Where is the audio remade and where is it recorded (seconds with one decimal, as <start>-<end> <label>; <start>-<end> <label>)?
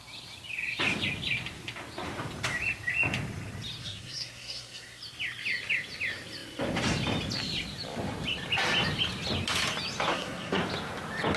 0.0-3.8 recorded; 3.8-5.0 remade; 5.0-10.1 recorded; 10.1-10.6 remade; 10.6-11.4 recorded